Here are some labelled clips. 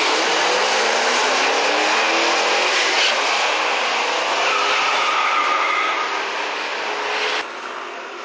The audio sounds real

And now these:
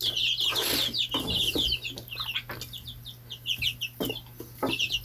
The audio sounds real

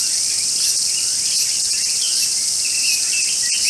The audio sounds real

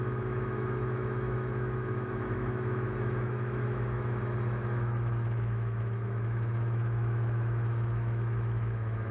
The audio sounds fake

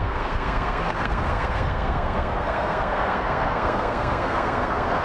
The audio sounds fake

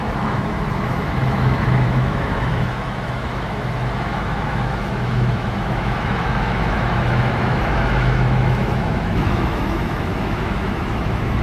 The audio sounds fake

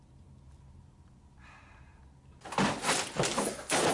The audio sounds real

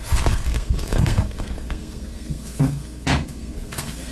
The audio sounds fake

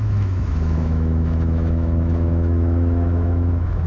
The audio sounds fake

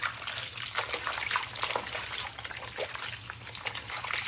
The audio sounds real